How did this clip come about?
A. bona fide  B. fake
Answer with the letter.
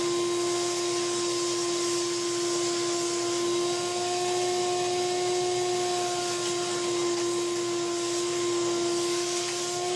A